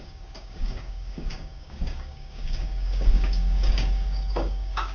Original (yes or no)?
no